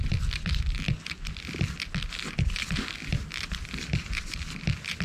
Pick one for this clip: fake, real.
real